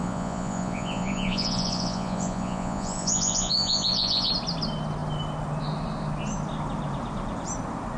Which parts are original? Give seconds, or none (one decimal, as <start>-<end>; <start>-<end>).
4.3-8.0